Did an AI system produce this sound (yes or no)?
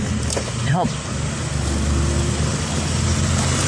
no